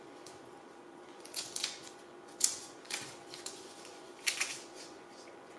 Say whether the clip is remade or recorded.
remade